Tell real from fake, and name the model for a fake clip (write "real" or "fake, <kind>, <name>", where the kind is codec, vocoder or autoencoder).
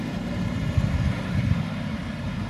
real